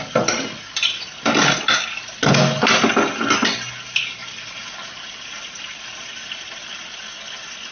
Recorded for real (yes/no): yes